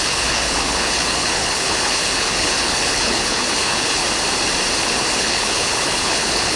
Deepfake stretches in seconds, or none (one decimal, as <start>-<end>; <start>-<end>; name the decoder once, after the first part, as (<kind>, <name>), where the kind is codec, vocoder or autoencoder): 0.0-4.0 (codec, HILCodec); 4.8-6.6